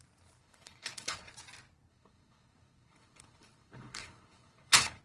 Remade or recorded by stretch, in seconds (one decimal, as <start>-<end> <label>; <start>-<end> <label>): 0.0-0.4 recorded; 0.4-1.3 remade; 1.3-1.9 recorded; 1.9-5.0 remade